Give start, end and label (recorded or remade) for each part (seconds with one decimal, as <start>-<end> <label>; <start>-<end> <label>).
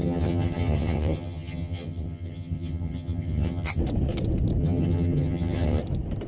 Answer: 0.0-3.8 remade; 3.8-4.6 recorded; 4.6-5.8 remade; 5.8-6.3 recorded